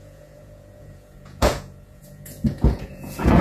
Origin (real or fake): fake